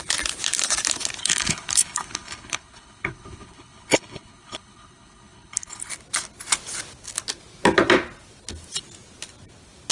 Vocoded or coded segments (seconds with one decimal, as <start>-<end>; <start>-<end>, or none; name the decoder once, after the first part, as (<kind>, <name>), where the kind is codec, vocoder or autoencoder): 1.2-5.9 (codec, HILCodec)